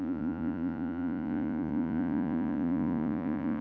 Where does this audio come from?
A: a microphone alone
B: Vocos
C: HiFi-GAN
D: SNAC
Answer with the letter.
B